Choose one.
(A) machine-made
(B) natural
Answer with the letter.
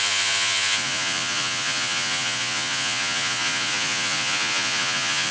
A